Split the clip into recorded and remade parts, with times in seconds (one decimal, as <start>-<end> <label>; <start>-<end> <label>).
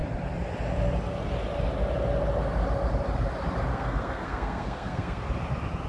0.0-3.7 recorded; 3.7-5.2 remade; 5.2-5.9 recorded